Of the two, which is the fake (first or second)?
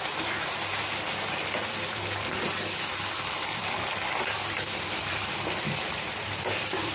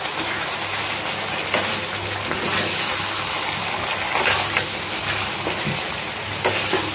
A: first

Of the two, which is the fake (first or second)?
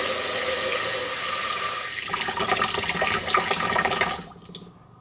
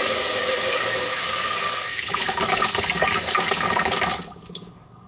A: second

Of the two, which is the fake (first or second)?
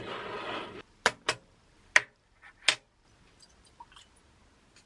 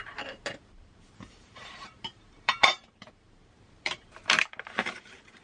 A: second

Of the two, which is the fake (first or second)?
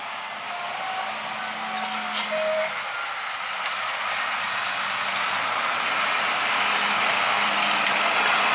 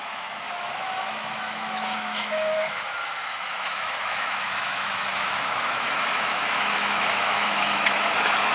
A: second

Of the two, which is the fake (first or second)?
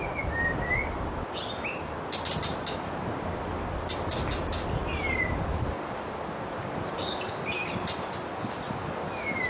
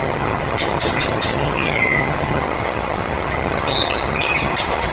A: second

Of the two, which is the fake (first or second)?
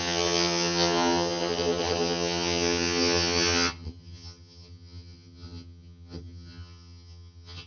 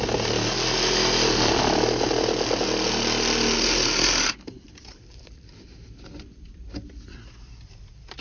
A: first